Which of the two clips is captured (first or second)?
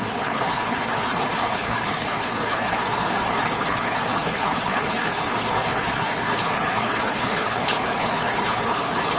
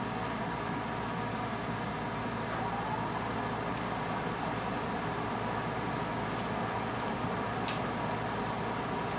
second